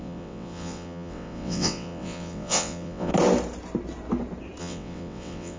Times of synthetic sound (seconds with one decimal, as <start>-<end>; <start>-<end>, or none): 0.0-3.1; 4.6-5.6